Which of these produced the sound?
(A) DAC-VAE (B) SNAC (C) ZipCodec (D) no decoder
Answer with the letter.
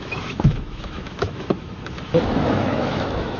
A